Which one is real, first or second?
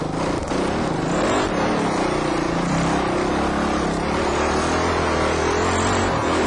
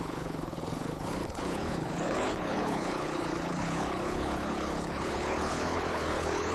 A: first